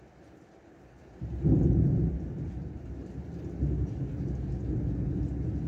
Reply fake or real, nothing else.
real